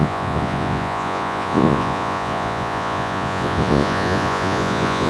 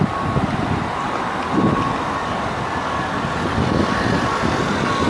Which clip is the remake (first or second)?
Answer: first